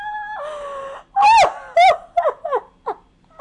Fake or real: real